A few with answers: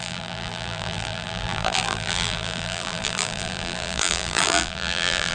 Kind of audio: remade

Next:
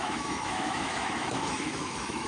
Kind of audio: remade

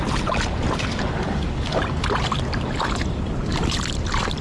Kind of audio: recorded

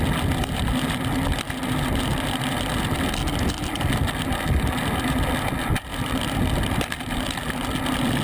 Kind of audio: recorded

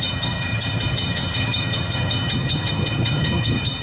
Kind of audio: remade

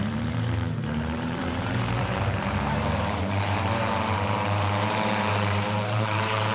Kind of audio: remade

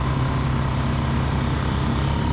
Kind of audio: remade